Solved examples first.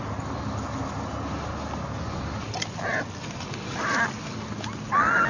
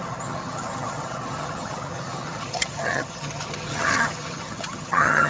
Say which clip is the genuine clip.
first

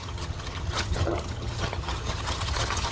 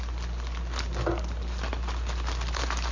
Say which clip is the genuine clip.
second